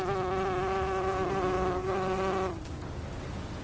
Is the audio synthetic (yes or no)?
no